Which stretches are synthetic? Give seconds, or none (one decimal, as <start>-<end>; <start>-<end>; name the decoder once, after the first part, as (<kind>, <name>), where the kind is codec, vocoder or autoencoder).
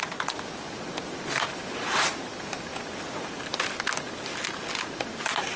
none